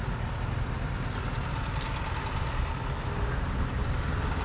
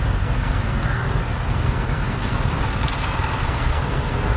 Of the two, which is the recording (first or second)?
first